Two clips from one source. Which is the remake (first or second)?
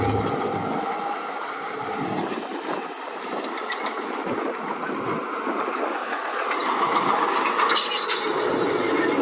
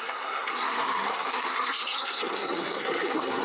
second